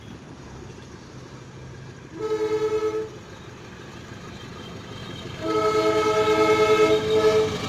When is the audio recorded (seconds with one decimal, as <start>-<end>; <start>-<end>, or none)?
0.0-5.0; 7.0-7.7